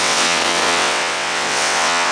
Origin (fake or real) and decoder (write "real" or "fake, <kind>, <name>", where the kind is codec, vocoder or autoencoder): fake, vocoder, WaveNeXt